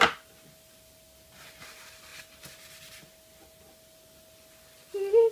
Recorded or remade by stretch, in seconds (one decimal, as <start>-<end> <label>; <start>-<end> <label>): 0.0-5.3 recorded